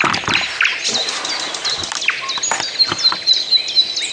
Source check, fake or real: real